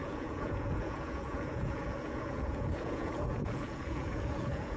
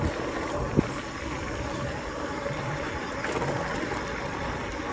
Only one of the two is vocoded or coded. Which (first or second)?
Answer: first